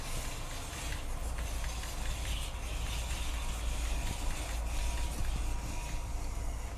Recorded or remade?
recorded